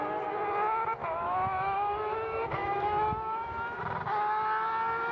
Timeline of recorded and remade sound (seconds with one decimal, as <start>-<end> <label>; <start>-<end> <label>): 0.0-1.0 recorded; 1.0-3.8 remade; 3.8-5.1 recorded